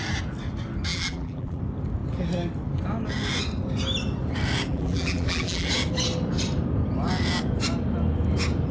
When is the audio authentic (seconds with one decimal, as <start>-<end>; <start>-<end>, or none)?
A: 0.0-0.9; 1.6-4.7; 5.7-8.7